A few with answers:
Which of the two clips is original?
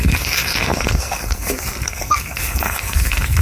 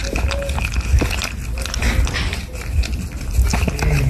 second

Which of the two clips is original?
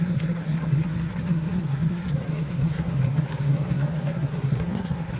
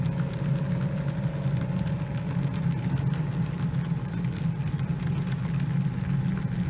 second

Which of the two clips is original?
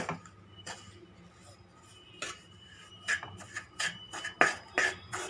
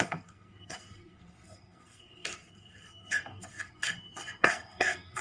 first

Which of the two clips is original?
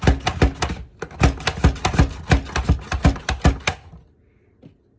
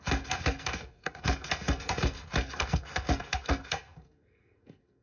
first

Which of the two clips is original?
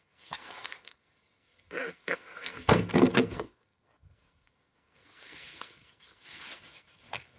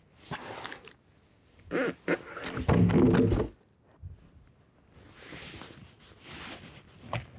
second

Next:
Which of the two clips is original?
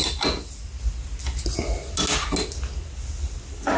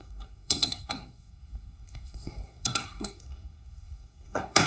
first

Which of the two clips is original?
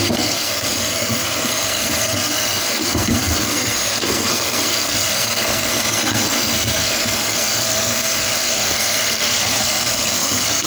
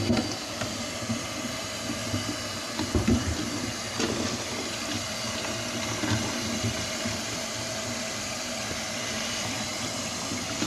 second